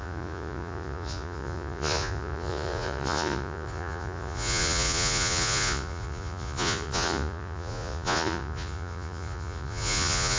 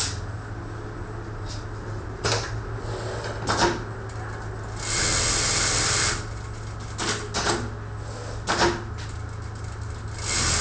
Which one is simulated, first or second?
first